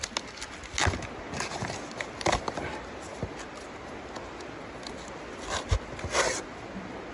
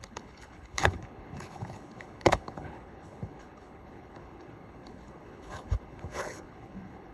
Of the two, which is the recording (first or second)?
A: first